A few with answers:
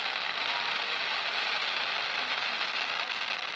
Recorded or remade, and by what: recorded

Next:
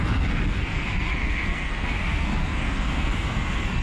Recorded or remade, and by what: remade, codec, SNAC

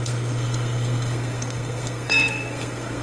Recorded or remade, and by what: remade, codec, SNAC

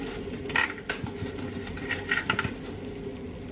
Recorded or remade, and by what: recorded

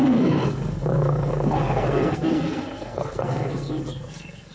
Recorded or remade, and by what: remade, codec, SNAC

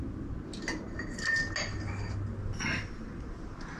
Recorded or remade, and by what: recorded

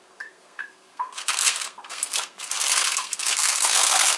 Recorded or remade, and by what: remade, codec, SNAC